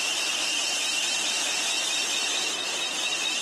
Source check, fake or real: real